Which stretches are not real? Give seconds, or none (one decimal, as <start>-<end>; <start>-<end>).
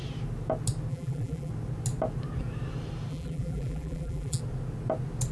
0.9-1.5; 3.1-4.4